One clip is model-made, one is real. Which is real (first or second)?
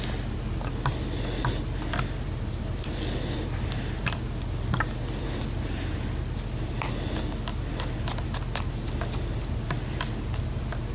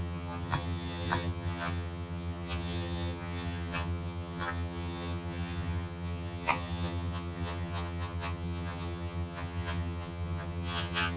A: first